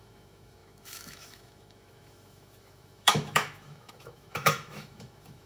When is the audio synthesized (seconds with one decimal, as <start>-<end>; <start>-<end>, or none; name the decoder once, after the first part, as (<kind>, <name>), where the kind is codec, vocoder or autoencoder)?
0.0-5.5 (autoencoder, DAC-VAE)